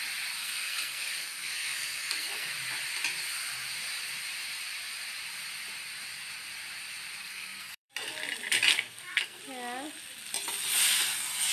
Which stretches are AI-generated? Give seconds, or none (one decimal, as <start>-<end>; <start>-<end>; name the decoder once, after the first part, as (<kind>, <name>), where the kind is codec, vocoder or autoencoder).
0.4-2.5 (codec, SNAC); 7.2-7.9; 8.7-9.4